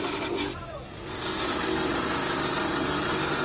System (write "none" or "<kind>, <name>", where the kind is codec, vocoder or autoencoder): none